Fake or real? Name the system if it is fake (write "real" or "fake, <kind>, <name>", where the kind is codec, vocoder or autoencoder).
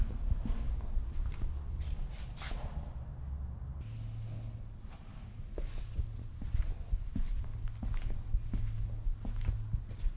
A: real